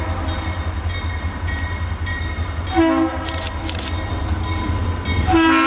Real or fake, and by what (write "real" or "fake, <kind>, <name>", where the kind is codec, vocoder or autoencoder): real